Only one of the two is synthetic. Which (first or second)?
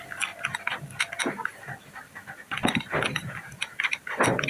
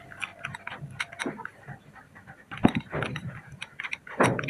second